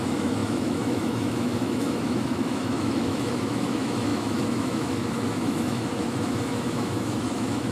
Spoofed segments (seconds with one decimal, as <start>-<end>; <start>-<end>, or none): 0.0-7.7